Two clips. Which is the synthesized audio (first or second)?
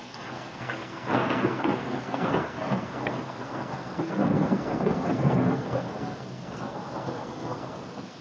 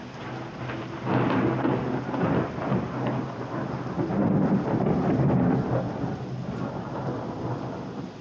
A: first